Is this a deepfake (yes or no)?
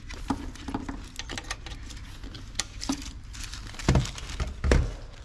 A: no